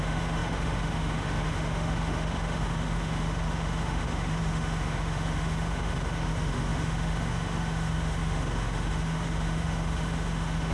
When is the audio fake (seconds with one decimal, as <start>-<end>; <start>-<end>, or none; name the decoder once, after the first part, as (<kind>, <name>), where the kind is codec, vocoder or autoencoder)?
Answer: 0.0-10.7 (autoencoder, DAC-VAE)